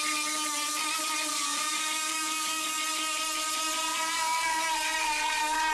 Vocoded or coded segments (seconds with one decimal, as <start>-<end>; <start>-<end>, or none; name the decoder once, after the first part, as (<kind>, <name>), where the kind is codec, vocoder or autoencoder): 1.3-2.8 (codec, DAC); 3.9-4.7